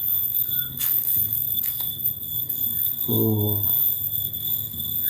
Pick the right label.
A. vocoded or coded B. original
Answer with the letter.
A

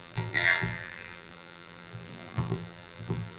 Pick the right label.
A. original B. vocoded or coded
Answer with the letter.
B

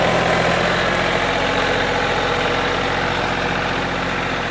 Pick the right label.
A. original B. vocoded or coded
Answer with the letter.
A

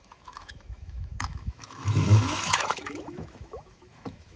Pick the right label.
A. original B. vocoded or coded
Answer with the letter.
B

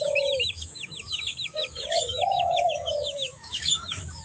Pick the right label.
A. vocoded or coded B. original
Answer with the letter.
A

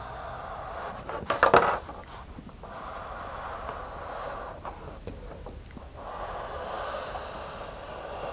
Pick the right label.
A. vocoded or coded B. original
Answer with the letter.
B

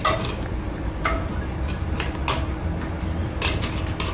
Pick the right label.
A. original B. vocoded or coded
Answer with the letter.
A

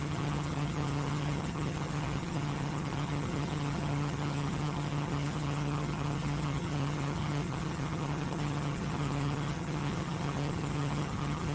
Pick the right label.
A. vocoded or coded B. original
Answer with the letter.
A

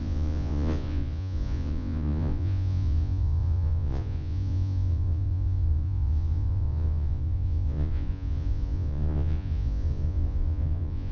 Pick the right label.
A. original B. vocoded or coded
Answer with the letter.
B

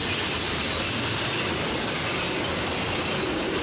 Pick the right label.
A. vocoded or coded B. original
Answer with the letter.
B